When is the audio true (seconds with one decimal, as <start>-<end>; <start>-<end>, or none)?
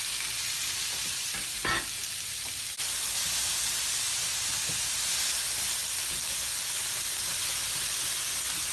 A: 0.0-8.7